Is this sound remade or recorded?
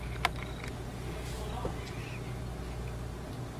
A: recorded